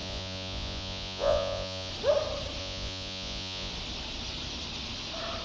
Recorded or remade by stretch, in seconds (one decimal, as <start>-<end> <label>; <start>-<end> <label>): 0.0-1.9 remade; 1.9-2.6 recorded; 2.6-3.7 remade; 3.7-5.4 recorded